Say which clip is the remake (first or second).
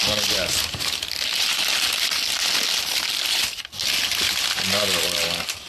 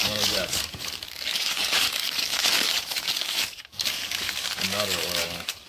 second